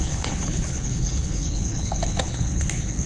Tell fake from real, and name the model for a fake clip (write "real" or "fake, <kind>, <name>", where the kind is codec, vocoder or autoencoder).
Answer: fake, codec, HILCodec